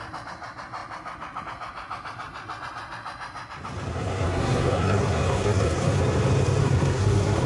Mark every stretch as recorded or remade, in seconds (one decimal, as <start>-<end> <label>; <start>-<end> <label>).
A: 0.0-3.9 recorded; 3.9-6.0 remade; 6.0-6.6 recorded; 6.6-7.5 remade